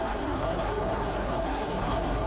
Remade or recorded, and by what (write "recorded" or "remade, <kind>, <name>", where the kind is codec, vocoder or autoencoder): remade, codec, SNAC